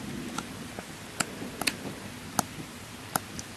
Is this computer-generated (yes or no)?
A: no